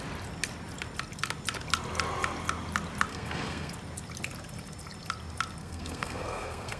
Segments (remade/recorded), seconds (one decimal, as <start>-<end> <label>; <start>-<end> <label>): 0.0-3.1 recorded; 3.1-3.7 remade; 3.7-5.6 recorded; 5.6-6.8 remade